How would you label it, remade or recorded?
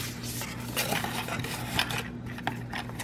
recorded